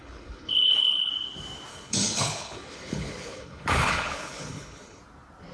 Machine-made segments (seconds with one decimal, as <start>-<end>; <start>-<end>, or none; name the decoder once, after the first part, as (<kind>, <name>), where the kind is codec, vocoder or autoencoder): 0.0-1.1 (codec, HILCodec); 1.7-5.0